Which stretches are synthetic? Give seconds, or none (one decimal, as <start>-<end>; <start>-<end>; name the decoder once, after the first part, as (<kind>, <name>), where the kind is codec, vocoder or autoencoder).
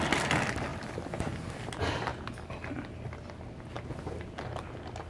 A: 0.7-1.3 (vocoder, BigVGAN v2)